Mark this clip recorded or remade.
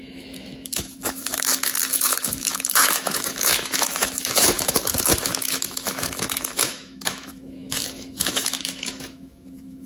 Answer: remade